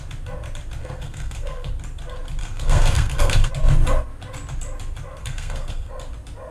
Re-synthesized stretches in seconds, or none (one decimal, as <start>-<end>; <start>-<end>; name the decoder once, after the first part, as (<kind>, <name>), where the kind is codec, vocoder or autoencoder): 0.8-1.7 (codec, SNAC); 2.4-3.5; 5.2-5.9